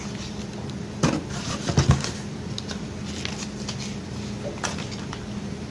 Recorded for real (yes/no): yes